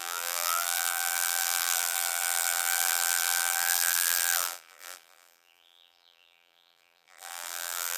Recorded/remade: remade